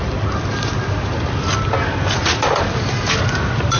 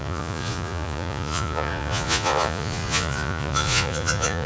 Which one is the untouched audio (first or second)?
first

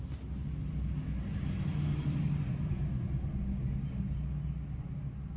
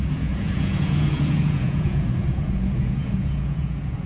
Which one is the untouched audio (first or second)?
first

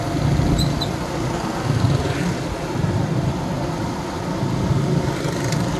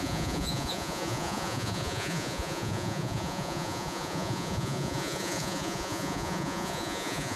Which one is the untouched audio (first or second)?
first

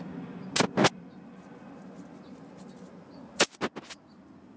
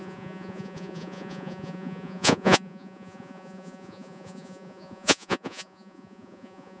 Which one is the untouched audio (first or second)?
first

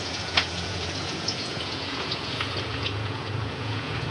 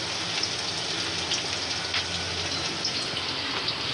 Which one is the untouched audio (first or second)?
second